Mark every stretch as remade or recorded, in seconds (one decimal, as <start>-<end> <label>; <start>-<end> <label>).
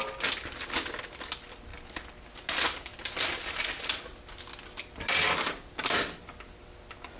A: 0.0-7.2 recorded